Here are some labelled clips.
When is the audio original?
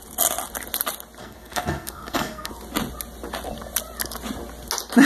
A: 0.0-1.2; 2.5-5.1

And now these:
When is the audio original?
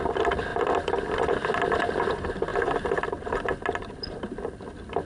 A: 0.0-5.0